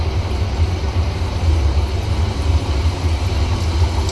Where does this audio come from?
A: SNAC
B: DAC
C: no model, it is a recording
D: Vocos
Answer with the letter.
C